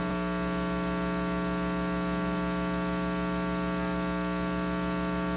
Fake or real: real